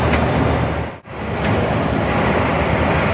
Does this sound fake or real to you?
fake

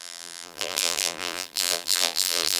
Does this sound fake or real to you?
fake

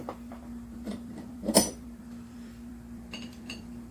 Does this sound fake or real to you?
fake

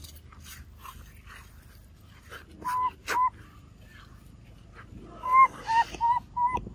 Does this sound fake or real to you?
real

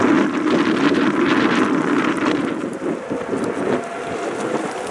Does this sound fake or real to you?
real